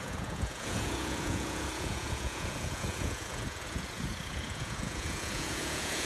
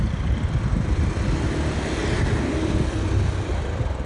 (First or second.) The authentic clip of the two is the second